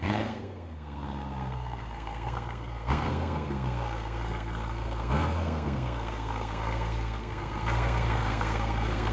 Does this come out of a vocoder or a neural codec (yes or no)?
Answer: yes